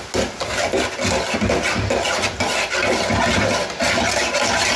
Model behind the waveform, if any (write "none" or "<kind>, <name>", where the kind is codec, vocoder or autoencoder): none